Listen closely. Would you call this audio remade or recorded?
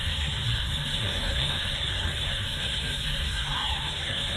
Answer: remade